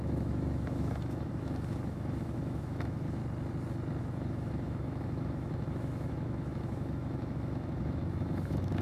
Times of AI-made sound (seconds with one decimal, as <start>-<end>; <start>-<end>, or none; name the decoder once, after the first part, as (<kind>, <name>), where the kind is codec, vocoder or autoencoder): 0.0-3.2 (autoencoder, DAC-VAE); 4.0-8.8